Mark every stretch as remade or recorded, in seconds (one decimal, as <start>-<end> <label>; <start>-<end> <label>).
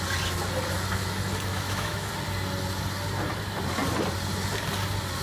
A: 0.0-1.5 recorded; 1.5-2.1 remade; 2.1-5.2 recorded